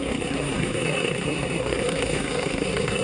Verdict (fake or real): fake